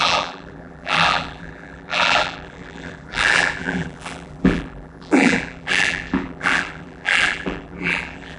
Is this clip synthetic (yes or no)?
yes